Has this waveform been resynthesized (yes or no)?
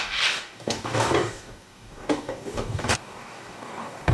yes